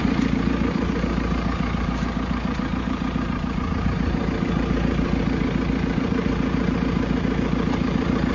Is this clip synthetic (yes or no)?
yes